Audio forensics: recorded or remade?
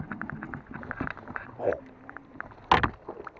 recorded